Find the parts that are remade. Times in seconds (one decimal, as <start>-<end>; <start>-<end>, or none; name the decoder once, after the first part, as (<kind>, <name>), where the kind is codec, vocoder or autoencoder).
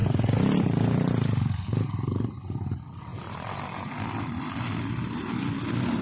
0.0-2.4 (vocoder, BigVGAN v2); 3.1-3.9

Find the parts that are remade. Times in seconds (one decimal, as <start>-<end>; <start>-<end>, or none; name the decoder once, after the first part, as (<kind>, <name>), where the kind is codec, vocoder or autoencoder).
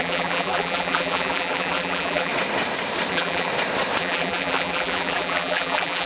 0.0-2.3 (vocoder, BigVGAN v2); 3.1-3.5; 4.0-6.1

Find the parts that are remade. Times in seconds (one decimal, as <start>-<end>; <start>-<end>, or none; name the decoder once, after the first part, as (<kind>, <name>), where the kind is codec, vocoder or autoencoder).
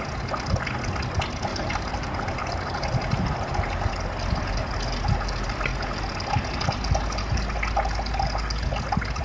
1.5-3.9 (vocoder, BigVGAN v2)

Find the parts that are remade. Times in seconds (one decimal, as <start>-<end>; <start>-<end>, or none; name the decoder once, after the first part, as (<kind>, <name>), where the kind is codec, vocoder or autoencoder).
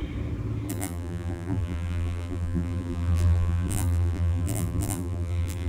0.7-5.7 (vocoder, BigVGAN v2)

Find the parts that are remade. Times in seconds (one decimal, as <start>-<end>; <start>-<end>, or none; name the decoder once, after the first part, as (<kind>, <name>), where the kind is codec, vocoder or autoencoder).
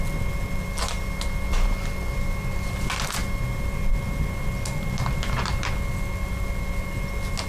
none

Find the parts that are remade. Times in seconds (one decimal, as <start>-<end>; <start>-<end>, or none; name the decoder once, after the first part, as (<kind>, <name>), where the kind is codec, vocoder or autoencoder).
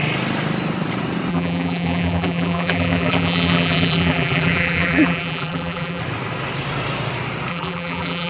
1.3-6.0 (vocoder, BigVGAN v2); 7.5-8.3